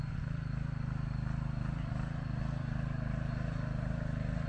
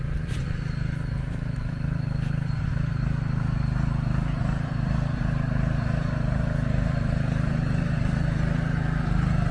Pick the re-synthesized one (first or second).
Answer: second